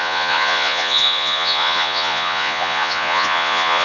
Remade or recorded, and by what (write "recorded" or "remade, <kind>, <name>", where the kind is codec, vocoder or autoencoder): remade, vocoder, Vocos